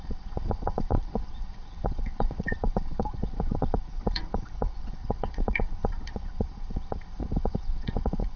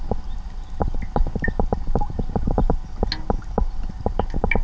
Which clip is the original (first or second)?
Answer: second